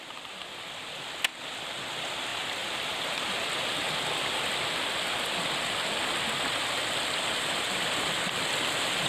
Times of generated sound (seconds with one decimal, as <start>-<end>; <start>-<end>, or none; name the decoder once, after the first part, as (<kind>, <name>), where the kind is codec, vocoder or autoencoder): none